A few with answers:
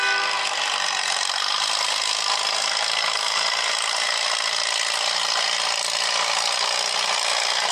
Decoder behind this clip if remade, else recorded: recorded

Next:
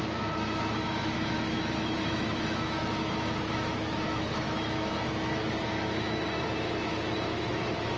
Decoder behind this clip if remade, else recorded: remade, autoencoder, DAC-VAE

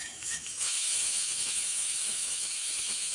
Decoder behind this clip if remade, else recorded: remade, autoencoder, DAC-VAE